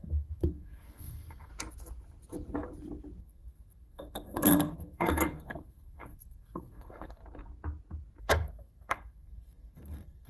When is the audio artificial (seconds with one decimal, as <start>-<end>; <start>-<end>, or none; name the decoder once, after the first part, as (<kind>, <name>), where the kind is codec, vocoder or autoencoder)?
0.0-1.5 (codec, SNAC); 3.2-7.2; 8.2-10.3